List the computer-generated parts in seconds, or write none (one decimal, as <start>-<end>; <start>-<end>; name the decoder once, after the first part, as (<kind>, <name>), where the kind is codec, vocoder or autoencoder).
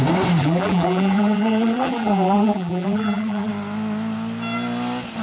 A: 0.4-3.5 (vocoder, BigVGAN v2)